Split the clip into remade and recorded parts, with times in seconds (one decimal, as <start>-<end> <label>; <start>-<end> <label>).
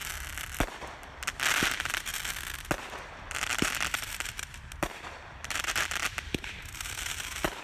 0.0-1.5 recorded; 1.5-2.1 remade; 2.1-3.1 recorded; 3.1-7.6 remade